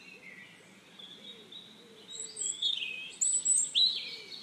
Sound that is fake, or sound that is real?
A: real